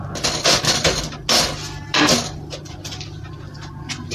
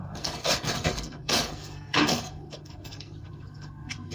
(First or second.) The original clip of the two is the first